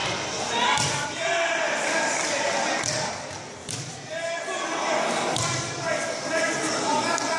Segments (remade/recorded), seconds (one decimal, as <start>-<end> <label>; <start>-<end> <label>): 0.0-7.4 recorded